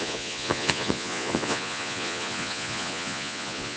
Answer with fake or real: fake